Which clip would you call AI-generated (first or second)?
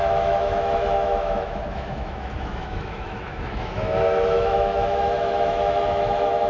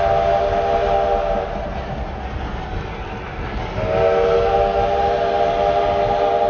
first